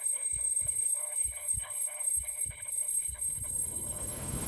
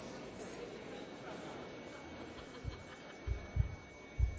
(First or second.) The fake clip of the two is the first